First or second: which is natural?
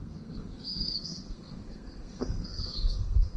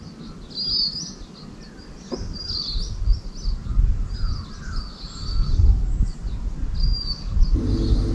second